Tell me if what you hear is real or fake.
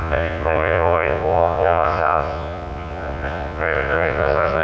fake